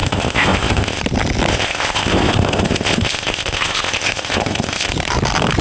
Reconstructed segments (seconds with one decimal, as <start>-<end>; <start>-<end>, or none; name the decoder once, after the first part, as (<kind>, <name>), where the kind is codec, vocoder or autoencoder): 0.0-1.0 (codec, ZipCodec); 1.5-4.9